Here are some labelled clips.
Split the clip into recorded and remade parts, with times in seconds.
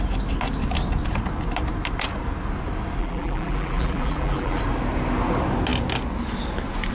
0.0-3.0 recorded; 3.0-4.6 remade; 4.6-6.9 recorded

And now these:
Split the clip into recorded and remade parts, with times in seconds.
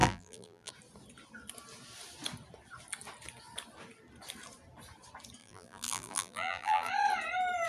0.0-0.7 remade; 0.7-5.4 recorded; 5.4-6.9 remade; 6.9-7.7 recorded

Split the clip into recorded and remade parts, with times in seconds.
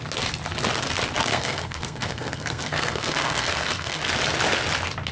0.0-1.3 recorded; 1.3-4.0 remade; 4.0-5.1 recorded